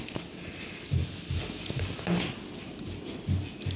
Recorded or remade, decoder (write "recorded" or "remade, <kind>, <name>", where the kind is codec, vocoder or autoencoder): recorded